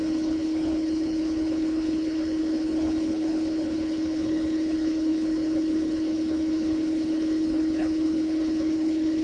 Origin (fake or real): fake